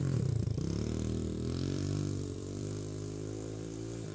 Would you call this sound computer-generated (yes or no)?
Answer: yes